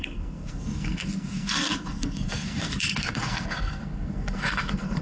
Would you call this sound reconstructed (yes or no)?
yes